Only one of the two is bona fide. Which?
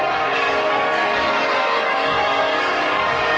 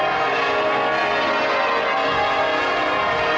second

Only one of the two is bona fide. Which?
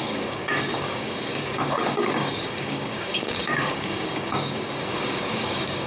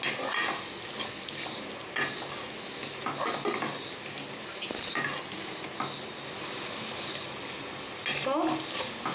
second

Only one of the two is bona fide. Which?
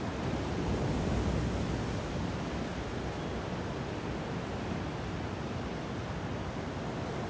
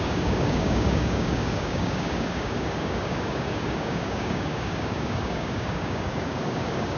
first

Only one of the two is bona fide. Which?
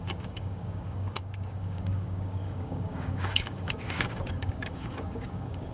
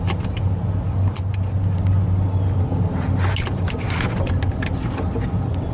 second